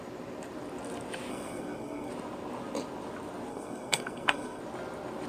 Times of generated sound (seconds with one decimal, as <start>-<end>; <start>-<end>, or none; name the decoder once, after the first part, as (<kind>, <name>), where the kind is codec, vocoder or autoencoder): 1.3-2.1 (codec, SNAC); 3.5-4.6